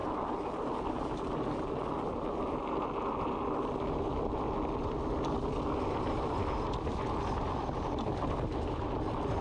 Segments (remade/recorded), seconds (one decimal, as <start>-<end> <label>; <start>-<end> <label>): 0.0-9.4 recorded